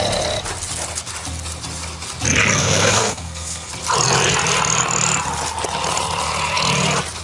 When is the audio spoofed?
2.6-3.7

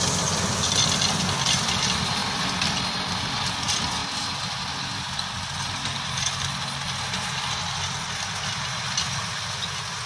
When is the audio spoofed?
none

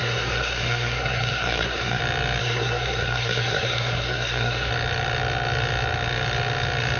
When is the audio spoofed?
0.0-2.0; 2.4-4.7

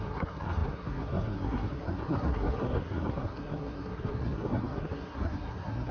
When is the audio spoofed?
0.0-5.9

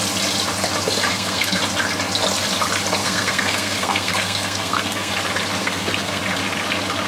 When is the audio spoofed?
1.1-1.6; 3.0-5.1; 5.6-6.2